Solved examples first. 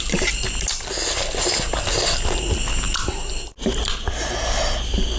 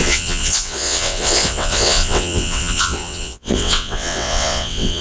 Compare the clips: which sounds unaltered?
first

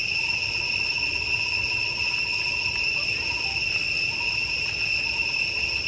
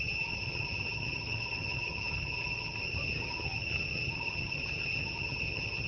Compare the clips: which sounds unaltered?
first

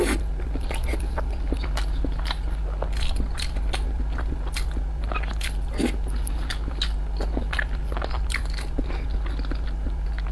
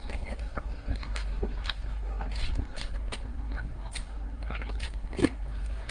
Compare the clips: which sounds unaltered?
first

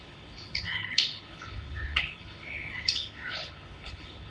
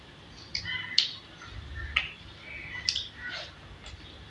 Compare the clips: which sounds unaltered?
second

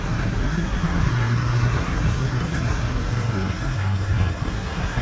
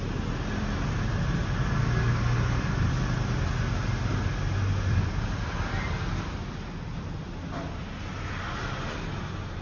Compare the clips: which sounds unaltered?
second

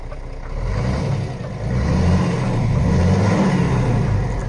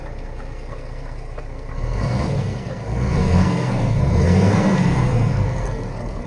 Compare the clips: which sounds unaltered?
first